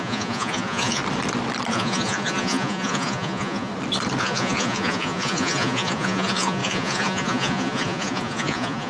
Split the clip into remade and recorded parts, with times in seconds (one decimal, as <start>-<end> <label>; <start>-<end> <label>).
0.0-1.0 remade; 1.0-1.7 recorded; 1.7-3.7 remade; 3.7-4.2 recorded; 4.2-8.9 remade